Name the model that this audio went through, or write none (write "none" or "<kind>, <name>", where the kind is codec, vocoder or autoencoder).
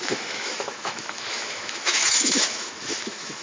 autoencoder, DAC-VAE